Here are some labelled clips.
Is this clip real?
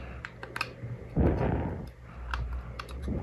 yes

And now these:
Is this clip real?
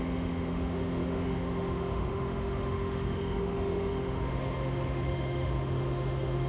no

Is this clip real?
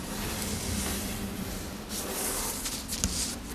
yes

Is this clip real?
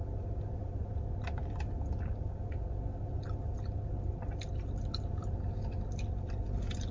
yes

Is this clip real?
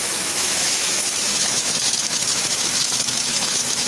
no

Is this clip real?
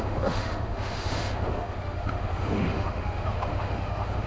no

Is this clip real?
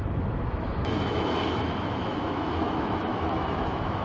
no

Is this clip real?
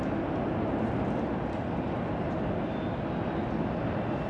yes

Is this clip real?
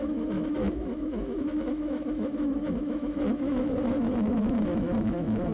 no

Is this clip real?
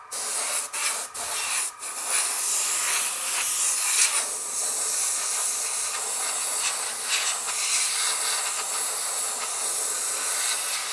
yes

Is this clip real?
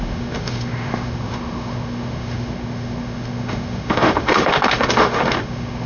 no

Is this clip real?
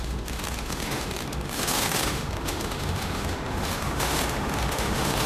no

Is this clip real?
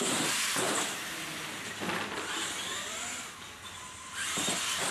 yes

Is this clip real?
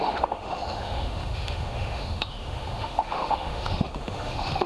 no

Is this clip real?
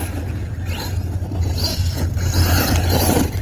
yes